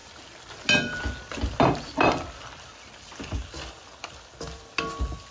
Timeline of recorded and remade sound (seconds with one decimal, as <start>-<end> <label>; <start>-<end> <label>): 0.0-5.3 recorded